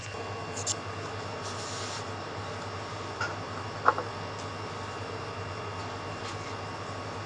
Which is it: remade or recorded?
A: recorded